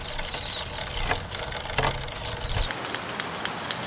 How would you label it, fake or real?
real